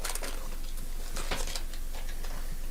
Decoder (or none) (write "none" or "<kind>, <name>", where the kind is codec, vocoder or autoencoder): none